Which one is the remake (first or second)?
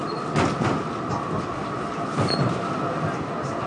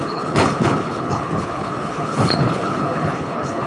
second